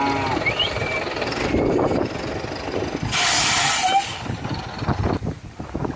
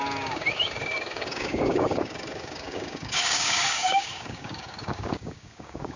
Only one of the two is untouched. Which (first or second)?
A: first